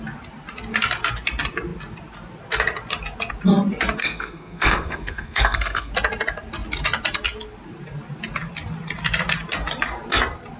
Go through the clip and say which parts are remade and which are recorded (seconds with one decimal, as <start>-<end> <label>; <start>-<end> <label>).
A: 0.0-4.0 recorded; 4.0-5.9 remade; 5.9-10.6 recorded